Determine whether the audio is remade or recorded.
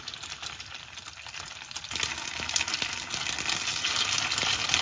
recorded